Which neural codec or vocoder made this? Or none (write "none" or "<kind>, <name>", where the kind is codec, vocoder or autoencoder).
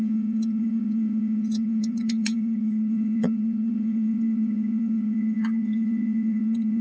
vocoder, Vocos